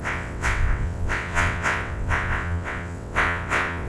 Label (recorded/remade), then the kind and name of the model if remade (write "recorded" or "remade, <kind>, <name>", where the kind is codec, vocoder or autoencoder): remade, vocoder, WaveNeXt